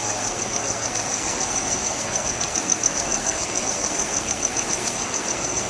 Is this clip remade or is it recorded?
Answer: remade